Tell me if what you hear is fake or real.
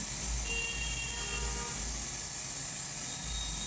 real